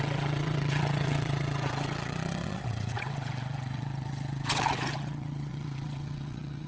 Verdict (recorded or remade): remade